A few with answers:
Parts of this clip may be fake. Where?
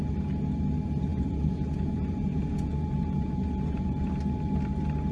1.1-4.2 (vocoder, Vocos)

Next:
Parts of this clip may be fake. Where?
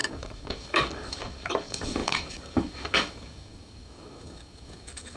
0.0-5.2 (codec, DAC)